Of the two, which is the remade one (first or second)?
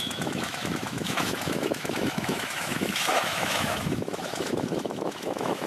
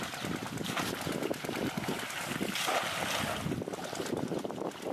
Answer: first